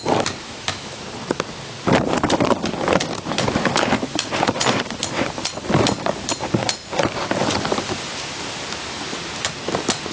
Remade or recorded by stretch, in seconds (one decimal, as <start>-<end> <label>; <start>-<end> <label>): 0.0-0.4 recorded; 0.4-1.0 remade; 1.0-10.1 recorded